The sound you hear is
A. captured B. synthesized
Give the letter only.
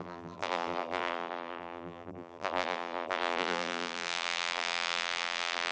B